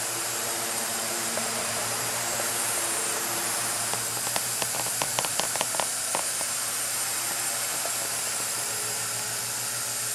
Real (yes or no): no